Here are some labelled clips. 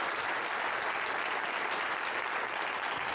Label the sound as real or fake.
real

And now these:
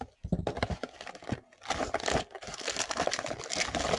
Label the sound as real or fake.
real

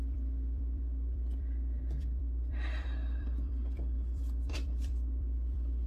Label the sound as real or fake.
fake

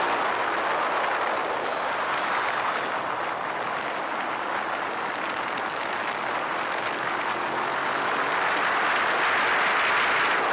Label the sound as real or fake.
real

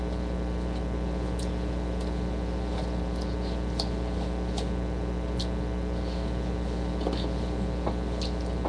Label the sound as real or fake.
real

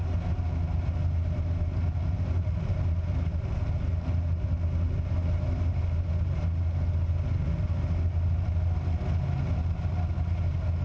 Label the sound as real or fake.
real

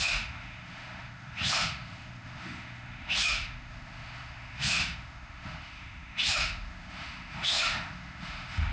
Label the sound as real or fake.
fake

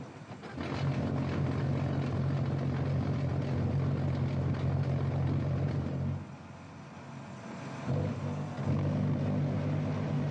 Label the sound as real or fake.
real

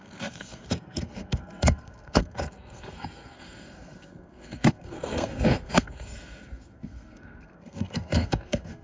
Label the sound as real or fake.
fake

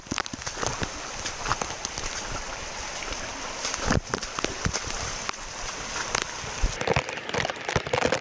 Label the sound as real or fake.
fake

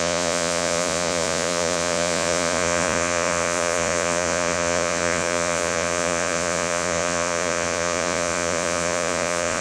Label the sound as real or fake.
fake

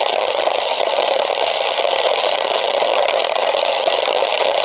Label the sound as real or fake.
fake